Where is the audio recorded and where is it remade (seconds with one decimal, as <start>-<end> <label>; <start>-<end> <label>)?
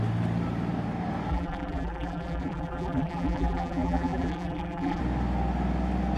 0.0-1.3 recorded; 1.3-5.0 remade; 5.0-6.2 recorded